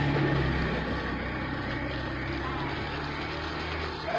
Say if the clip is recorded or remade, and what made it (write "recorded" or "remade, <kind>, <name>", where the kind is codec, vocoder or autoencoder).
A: recorded